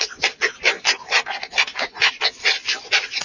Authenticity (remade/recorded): recorded